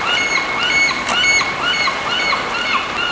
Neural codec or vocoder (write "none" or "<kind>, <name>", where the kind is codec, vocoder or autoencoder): none